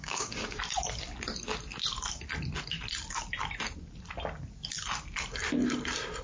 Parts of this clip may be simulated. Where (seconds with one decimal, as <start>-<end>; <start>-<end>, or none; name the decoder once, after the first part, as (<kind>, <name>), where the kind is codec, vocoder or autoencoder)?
0.0-0.6 (codec, DAC)